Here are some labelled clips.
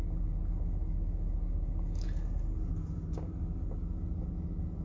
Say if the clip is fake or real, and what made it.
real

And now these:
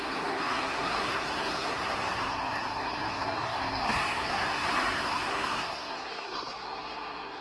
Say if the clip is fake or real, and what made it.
fake, codec, SNAC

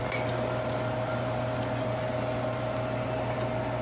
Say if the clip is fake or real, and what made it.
real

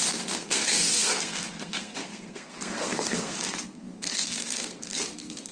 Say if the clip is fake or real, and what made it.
fake, codec, SNAC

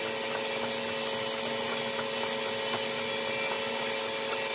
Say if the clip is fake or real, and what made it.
real